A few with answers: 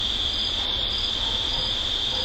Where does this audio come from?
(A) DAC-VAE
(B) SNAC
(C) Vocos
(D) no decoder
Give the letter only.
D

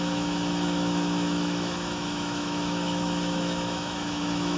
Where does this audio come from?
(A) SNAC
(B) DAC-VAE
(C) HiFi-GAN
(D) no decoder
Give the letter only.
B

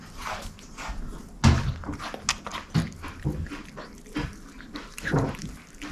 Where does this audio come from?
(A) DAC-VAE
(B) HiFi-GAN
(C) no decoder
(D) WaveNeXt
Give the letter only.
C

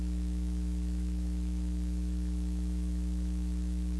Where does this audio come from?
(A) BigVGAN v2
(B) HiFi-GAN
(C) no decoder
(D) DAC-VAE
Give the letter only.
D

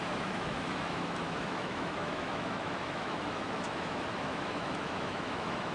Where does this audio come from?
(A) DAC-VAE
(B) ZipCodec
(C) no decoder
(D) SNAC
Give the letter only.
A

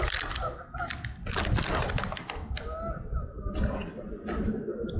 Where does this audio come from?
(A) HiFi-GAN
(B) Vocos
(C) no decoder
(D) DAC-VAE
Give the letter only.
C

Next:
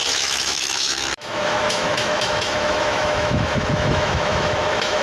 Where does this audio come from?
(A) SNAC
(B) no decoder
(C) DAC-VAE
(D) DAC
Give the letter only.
C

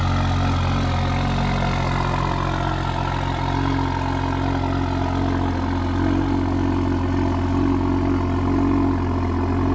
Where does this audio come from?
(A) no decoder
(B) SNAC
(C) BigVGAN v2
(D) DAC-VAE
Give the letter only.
A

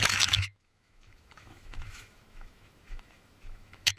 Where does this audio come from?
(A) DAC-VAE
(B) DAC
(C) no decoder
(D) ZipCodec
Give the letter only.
A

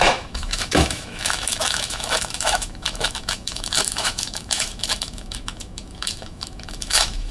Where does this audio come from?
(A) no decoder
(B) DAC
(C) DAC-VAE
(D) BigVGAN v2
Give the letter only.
C